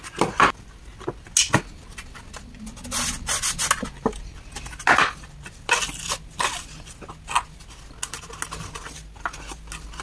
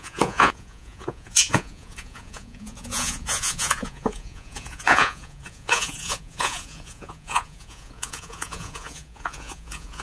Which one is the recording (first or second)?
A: first